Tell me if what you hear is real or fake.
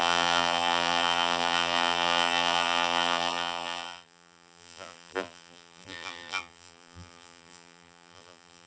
fake